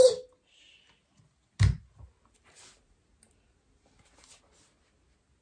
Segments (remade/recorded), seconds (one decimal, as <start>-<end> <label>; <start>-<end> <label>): 0.0-5.4 recorded